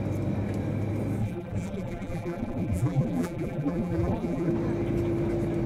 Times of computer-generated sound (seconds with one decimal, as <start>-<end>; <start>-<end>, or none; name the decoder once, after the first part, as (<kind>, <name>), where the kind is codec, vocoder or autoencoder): 1.2-4.5 (vocoder, BigVGAN v2)